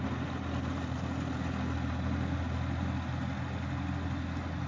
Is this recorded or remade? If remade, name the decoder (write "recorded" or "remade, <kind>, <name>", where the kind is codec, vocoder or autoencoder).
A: recorded